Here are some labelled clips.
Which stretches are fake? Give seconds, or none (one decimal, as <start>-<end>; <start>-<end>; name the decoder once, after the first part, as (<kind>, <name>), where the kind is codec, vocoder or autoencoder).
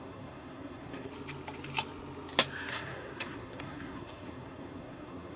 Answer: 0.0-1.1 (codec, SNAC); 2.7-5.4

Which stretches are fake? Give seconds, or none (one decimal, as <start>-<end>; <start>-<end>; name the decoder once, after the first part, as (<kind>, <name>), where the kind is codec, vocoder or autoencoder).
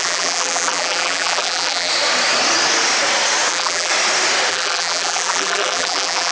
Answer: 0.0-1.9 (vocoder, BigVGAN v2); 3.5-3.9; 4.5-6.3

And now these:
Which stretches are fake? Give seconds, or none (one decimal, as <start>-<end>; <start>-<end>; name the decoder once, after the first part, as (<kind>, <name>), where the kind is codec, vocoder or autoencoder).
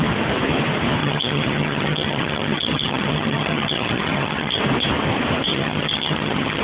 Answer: 1.0-4.6 (vocoder, HiFi-GAN); 5.5-6.6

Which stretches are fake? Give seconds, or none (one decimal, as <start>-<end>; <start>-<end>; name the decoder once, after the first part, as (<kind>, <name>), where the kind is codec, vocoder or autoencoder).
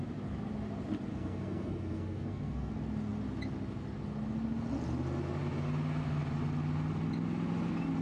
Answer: 1.1-2.7 (codec, SNAC)